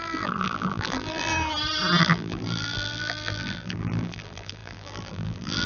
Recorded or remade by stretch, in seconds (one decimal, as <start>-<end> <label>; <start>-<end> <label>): 0.0-1.3 remade; 1.3-2.0 recorded; 2.0-5.7 remade